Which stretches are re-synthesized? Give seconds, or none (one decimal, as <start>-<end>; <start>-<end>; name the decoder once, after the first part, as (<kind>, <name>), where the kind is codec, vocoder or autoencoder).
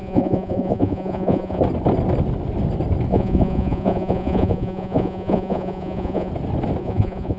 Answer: 0.0-1.6 (vocoder, Vocos); 3.1-6.3; 6.8-7.4